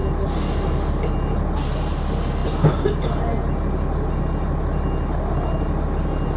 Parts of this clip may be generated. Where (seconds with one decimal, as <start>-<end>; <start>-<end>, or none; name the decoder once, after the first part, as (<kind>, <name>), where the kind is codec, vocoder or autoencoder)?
none